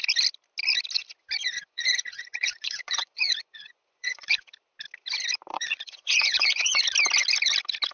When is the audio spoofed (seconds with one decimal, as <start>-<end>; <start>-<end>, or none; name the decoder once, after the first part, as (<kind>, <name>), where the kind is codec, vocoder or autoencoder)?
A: 1.4-4.5 (vocoder, Vocos); 5.5-6.8